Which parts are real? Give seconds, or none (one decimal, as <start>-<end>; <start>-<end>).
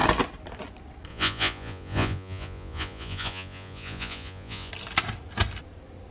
0.0-1.1; 4.7-6.1